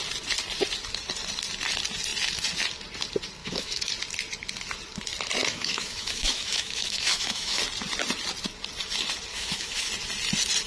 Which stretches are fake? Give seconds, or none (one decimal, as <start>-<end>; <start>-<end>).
3.4-3.9; 5.4-7.6; 9.3-9.9